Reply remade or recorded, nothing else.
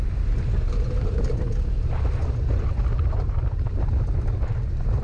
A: recorded